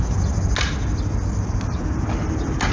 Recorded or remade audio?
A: recorded